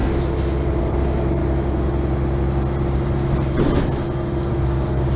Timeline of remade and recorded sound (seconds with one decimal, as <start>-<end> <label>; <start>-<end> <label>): 0.0-0.8 recorded; 0.8-1.4 remade; 1.4-4.5 recorded; 4.5-5.2 remade